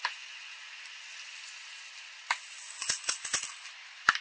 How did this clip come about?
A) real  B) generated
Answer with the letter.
A